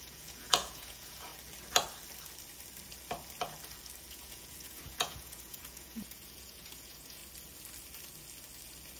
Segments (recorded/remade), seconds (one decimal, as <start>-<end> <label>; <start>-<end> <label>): 0.0-1.3 remade; 1.3-4.1 recorded; 4.1-7.2 remade; 7.2-9.0 recorded